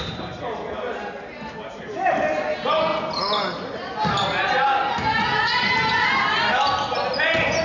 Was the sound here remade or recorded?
recorded